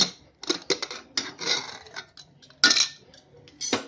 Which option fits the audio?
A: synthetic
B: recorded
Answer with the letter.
B